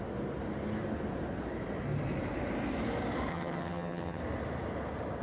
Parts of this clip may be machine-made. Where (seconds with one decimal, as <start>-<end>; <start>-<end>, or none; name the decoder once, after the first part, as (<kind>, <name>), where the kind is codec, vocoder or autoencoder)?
3.3-4.2 (vocoder, HiFi-GAN)